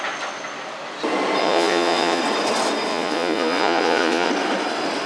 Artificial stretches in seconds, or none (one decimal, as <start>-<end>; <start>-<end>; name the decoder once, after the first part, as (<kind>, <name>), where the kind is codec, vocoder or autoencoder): 1.4-2.2 (vocoder, Vocos); 2.9-4.3